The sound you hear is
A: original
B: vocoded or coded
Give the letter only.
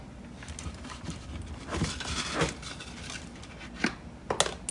A